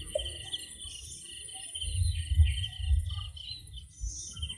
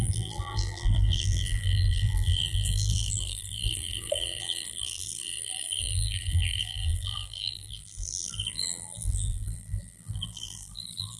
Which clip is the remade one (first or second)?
second